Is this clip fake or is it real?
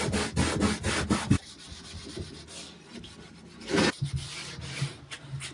real